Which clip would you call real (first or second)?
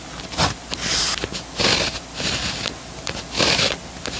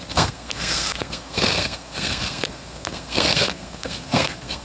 first